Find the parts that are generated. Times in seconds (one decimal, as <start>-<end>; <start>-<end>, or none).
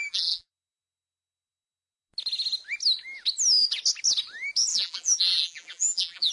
0.0-0.5; 4.7-6.3